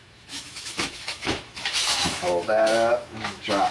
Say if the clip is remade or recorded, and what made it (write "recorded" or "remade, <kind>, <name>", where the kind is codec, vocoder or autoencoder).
remade, autoencoder, DAC-VAE